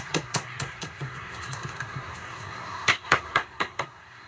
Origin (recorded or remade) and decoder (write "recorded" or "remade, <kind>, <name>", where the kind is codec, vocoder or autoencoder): remade, codec, SNAC